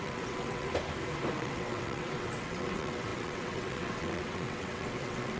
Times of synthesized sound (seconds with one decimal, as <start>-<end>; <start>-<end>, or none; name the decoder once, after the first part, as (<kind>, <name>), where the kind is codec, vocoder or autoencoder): 0.0-0.7 (vocoder, WaveNeXt); 1.3-5.4